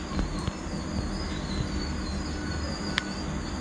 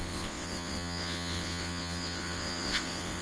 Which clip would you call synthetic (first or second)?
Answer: second